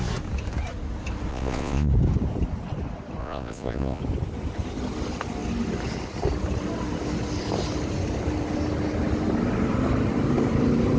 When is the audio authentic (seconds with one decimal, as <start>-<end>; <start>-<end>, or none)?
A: 0.0-1.3; 1.9-3.2; 4.0-11.0